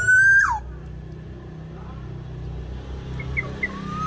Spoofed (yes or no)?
no